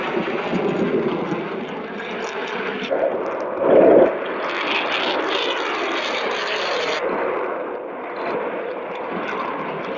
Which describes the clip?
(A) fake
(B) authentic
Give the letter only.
B